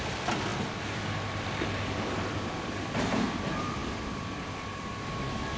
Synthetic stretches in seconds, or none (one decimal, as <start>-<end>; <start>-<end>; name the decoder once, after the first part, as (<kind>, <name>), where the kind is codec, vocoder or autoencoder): none